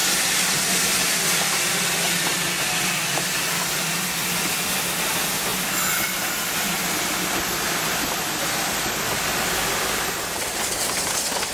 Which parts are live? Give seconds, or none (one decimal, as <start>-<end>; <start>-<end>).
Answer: 0.0-11.5